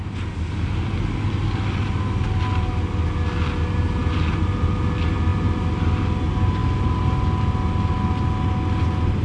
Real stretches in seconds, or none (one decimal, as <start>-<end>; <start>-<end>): 0.0-9.2